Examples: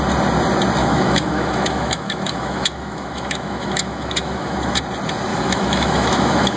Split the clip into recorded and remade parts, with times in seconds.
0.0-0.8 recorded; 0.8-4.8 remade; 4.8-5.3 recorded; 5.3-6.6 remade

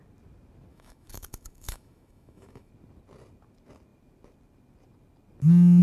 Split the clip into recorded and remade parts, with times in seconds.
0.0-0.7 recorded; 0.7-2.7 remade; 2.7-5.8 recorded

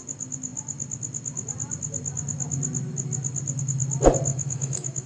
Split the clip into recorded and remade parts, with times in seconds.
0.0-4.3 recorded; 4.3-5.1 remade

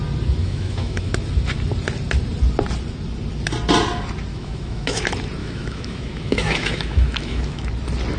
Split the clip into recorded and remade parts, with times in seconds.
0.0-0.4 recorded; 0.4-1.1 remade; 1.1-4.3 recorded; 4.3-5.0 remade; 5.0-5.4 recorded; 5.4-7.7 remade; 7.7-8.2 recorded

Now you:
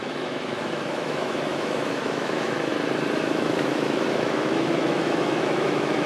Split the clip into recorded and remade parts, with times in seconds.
0.0-2.7 remade; 2.7-3.2 recorded; 3.2-6.1 remade

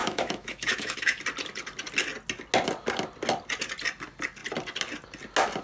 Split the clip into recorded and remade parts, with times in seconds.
0.0-1.2 remade; 1.2-5.6 recorded

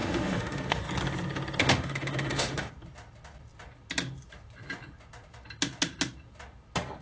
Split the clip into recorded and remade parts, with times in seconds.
0.0-0.8 remade; 0.8-1.6 recorded; 1.6-2.7 remade; 2.7-7.0 recorded

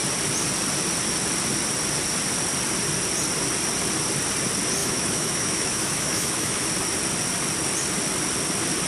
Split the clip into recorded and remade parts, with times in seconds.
0.0-4.8 recorded; 4.8-6.7 remade; 6.7-8.9 recorded